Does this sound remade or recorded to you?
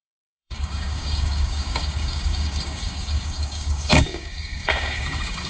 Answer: remade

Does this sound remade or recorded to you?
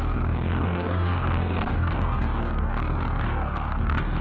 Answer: remade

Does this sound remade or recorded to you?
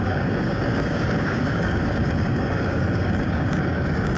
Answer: remade